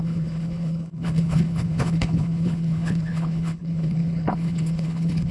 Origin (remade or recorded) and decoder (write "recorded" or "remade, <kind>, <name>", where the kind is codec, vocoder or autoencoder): remade, codec, HILCodec